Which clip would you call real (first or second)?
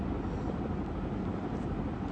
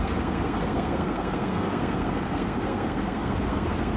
first